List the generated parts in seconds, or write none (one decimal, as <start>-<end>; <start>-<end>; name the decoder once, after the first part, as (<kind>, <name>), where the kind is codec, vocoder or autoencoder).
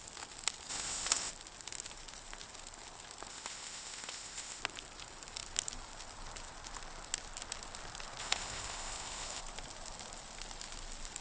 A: 0.7-1.3 (codec, ZipCodec); 3.3-4.6; 8.2-9.4